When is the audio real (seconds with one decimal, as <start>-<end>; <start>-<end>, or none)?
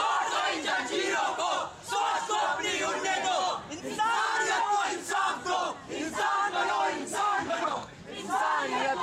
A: 0.0-4.6; 5.2-7.0; 8.0-9.0